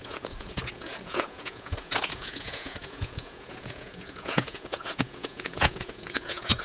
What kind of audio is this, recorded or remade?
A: remade